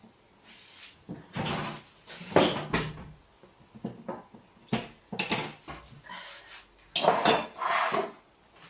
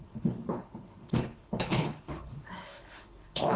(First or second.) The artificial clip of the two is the second